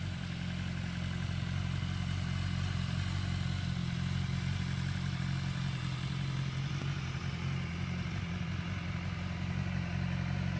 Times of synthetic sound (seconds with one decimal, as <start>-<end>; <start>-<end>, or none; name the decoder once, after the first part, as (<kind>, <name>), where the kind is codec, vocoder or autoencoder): none

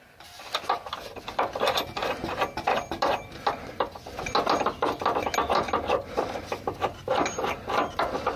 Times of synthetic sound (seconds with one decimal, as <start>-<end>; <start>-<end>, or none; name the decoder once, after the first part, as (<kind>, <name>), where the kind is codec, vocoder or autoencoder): none

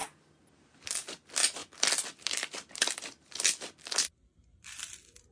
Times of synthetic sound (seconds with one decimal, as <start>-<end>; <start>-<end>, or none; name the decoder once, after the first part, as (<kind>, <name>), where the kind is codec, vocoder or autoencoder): none

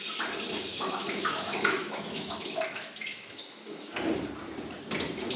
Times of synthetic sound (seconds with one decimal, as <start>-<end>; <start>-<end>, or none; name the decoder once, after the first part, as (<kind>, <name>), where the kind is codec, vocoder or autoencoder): 0.7-3.9 (autoencoder, DAC-VAE)

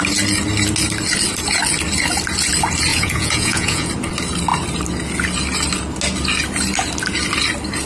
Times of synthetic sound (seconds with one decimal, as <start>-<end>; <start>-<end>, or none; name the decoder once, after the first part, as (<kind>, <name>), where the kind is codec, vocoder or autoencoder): 2.9-3.9 (vocoder, Vocos)

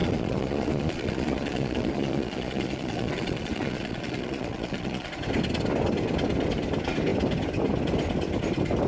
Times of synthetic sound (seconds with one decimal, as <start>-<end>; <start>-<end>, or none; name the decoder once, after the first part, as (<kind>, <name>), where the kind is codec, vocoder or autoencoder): 0.0-5.1 (vocoder, Vocos)

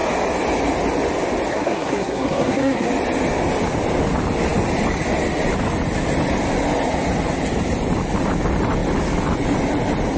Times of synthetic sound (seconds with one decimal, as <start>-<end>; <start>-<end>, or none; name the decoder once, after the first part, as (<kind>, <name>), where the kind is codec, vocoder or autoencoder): 1.5-2.9 (codec, SNAC)

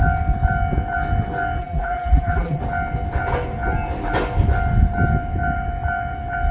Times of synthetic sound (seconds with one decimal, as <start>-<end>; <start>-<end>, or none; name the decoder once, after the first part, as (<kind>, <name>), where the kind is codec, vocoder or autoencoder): 1.6-2.6 (vocoder, BigVGAN v2)